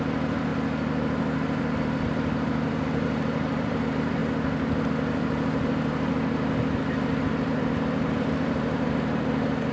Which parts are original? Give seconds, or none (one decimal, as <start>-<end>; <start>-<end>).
0.5-1.6; 4.2-7.2